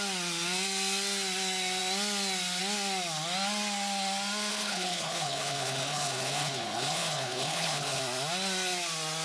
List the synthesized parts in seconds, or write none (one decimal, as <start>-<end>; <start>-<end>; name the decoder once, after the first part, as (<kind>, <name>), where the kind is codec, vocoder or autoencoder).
4.5-8.0 (codec, HILCodec)